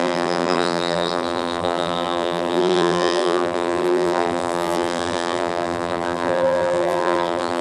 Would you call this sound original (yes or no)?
no